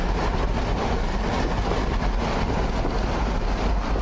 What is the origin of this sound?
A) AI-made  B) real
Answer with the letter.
B